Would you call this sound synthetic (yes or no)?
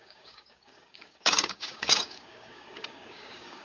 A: yes